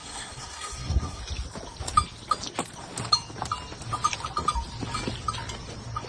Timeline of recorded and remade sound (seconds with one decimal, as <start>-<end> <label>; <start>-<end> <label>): 0.0-1.2 remade; 1.2-6.1 recorded